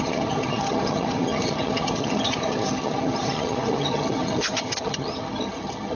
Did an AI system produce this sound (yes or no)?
yes